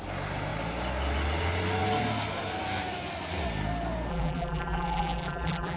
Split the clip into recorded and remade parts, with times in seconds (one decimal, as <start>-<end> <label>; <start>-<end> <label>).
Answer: 0.0-4.1 recorded; 4.1-5.8 remade